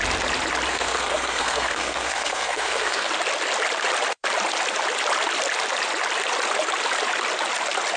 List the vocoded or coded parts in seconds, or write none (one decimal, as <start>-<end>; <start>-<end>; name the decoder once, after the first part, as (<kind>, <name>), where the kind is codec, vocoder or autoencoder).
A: 0.7-3.1 (codec, SNAC)